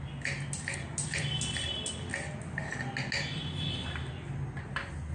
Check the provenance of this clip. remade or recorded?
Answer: recorded